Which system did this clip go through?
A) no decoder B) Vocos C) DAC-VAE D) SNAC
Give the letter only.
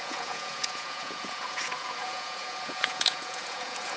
B